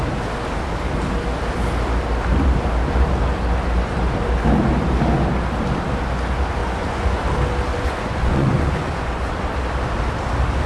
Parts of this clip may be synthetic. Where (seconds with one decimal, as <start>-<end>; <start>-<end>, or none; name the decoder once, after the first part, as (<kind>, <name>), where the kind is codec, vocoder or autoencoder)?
6.6-7.2 (vocoder, Vocos); 7.7-9.3